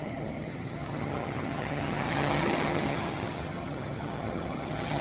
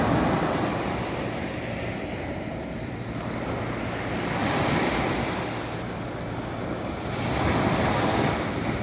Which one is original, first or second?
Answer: second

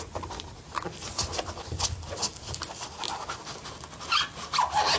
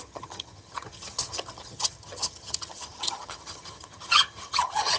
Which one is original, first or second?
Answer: first